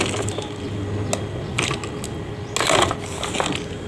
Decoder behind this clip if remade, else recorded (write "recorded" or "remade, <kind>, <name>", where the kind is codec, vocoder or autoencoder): recorded